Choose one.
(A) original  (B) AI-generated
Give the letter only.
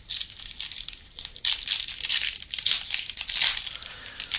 A